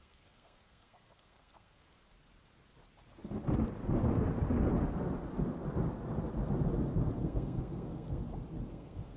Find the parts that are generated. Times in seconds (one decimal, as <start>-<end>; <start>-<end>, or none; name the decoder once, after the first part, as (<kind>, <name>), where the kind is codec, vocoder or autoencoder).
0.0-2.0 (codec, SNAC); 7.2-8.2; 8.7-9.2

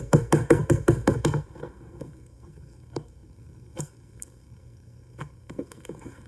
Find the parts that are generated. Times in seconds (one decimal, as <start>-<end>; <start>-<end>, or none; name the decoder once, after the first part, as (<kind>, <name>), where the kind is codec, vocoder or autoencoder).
0.0-6.3 (codec, SNAC)

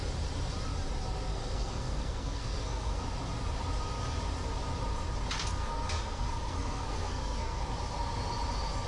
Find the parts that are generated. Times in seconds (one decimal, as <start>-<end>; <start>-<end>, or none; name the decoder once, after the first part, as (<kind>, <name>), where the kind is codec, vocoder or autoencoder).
1.3-3.0 (codec, SNAC); 5.6-7.6

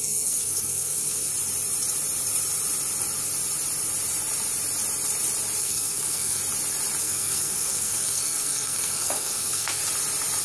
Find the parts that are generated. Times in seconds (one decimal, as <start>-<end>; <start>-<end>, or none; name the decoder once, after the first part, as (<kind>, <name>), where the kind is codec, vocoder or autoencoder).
0.0-1.3 (codec, SNAC); 5.6-6.4; 7.0-9.8

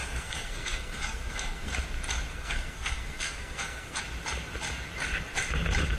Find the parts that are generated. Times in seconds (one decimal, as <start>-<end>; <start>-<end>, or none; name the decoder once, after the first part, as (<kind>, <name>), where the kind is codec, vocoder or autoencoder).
0.0-1.7 (codec, SNAC); 2.3-4.0

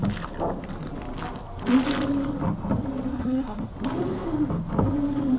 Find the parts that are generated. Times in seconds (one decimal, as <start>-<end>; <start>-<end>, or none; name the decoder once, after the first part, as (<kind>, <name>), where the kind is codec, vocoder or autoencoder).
3.1-3.7 (codec, SNAC)

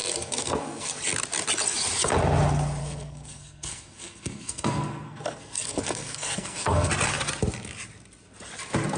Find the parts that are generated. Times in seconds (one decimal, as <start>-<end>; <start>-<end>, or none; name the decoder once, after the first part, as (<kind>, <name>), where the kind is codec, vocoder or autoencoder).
0.0-0.9 (codec, SNAC); 2.8-6.9